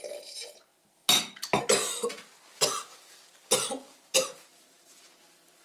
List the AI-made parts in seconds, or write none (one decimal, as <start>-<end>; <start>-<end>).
3.9-5.0

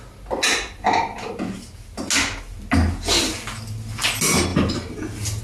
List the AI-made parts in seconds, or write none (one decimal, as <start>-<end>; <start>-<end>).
none

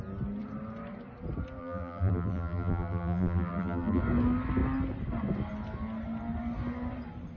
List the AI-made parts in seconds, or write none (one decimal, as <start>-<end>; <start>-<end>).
1.6-4.0